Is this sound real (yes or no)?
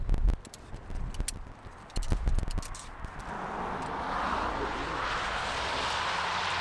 yes